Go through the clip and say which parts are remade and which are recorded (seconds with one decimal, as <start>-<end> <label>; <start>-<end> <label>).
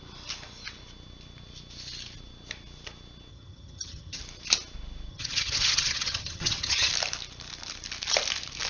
0.0-3.3 recorded; 3.3-4.2 remade; 4.2-5.1 recorded; 5.1-6.9 remade; 6.9-8.7 recorded